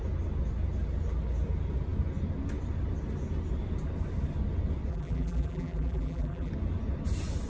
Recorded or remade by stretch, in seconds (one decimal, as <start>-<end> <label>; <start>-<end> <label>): 0.0-4.9 recorded; 4.9-6.5 remade; 6.5-7.5 recorded